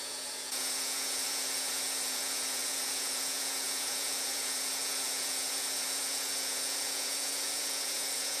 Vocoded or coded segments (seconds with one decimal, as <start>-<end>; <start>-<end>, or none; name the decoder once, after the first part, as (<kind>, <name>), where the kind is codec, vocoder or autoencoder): 0.0-8.4 (vocoder, Vocos)

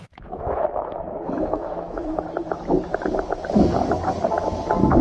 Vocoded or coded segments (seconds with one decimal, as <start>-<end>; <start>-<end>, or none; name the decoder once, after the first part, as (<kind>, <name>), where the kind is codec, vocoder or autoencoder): 0.0-2.1 (autoencoder, DAC-VAE)